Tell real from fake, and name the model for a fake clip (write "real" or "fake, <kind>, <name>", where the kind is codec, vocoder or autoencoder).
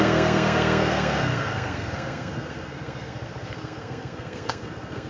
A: fake, codec, SNAC